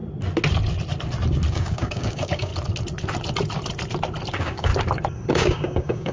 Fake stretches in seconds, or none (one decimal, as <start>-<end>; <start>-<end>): 1.5-2.5; 4.3-4.7; 5.3-6.1